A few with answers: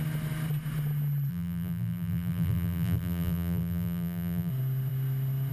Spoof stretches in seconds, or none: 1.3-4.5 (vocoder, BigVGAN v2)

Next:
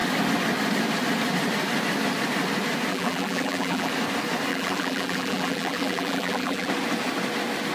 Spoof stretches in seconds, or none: 2.9-3.9 (vocoder, BigVGAN v2); 4.5-6.7

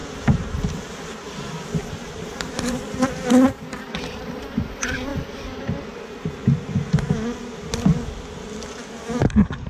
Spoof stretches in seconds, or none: 1.8-2.8 (vocoder, BigVGAN v2)